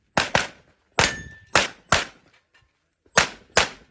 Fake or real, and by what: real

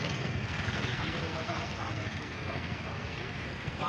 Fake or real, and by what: fake, codec, SNAC